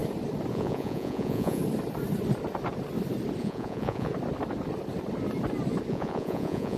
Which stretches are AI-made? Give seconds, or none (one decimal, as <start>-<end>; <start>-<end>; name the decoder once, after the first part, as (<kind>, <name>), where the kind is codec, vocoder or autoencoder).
0.5-1.6 (vocoder, Vocos); 3.4-4.1; 5.9-6.8